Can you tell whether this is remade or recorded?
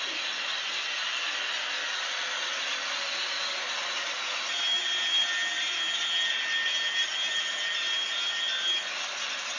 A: recorded